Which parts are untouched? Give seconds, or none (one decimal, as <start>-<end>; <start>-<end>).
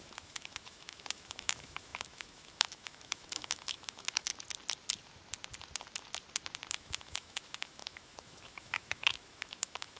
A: 4.3-6.7